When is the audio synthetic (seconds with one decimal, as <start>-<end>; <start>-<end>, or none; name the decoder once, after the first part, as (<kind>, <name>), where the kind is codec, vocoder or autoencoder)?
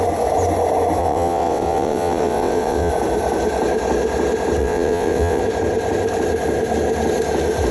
1.0-2.9 (vocoder, WaveNeXt); 4.6-5.4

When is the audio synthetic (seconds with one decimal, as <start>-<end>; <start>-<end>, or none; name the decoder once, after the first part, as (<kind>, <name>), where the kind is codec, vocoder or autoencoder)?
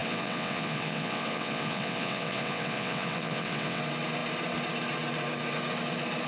0.0-3.8 (vocoder, WaveNeXt)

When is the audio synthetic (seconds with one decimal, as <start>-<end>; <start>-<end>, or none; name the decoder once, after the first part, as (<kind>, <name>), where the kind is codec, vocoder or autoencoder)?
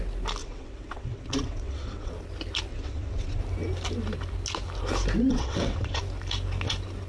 0.4-2.1 (vocoder, WaveNeXt); 2.7-3.4; 5.3-6.0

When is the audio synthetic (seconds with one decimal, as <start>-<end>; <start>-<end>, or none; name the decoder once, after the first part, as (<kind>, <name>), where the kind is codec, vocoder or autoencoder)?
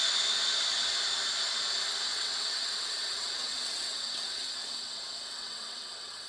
2.1-6.3 (vocoder, WaveNeXt)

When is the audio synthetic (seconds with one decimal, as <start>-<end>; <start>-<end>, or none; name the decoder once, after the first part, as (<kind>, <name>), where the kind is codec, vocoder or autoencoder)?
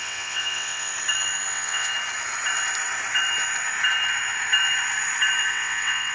0.0-0.9 (vocoder, WaveNeXt); 1.5-1.9; 5.5-6.1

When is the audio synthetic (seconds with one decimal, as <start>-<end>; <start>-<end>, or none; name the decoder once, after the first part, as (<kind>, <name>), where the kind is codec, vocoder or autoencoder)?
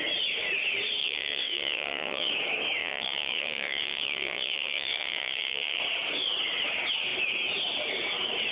1.0-2.3 (vocoder, WaveNeXt); 2.8-5.8